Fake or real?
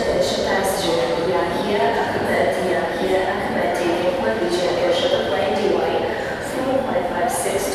fake